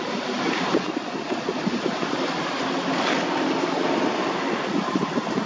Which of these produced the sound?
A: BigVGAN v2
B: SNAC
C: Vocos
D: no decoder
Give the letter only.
D